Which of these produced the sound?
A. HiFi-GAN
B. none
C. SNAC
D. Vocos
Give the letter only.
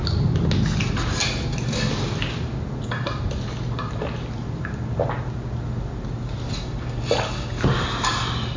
B